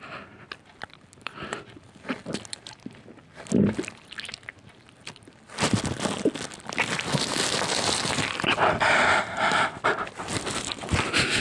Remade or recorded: remade